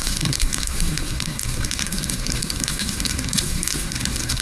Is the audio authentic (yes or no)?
no